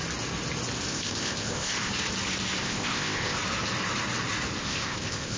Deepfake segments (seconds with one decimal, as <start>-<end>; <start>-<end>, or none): 0.9-1.9; 2.6-3.4; 4.6-5.4